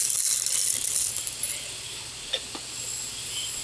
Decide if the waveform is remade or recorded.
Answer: recorded